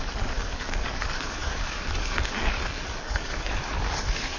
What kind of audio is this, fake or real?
fake